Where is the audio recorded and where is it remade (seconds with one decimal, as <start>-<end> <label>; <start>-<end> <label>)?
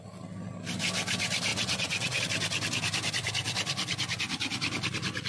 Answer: 0.0-1.5 recorded; 1.5-2.2 remade; 2.2-5.3 recorded